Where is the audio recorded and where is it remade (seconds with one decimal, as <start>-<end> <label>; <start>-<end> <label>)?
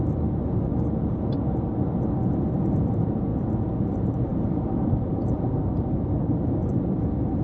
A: 0.0-0.7 remade; 0.7-2.3 recorded; 2.3-3.3 remade; 3.3-3.8 recorded; 3.8-7.4 remade